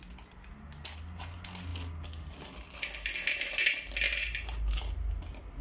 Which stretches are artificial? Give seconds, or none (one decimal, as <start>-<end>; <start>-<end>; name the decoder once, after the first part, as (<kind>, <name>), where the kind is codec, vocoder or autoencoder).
none